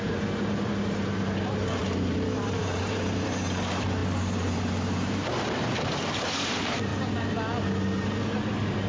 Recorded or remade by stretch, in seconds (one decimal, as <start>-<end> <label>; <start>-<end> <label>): 0.0-6.9 remade; 6.9-8.9 recorded